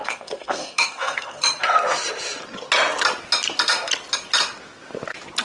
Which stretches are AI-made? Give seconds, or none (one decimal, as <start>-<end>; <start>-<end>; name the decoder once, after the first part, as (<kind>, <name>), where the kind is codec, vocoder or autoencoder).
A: 0.0-1.4 (codec, SNAC)